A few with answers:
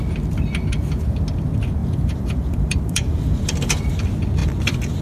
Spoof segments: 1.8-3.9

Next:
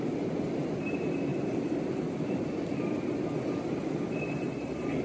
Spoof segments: none

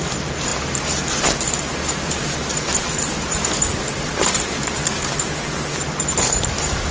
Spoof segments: 0.0-3.0; 3.8-6.9